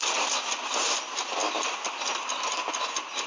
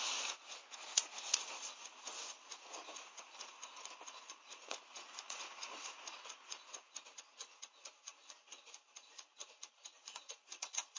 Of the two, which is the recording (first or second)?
first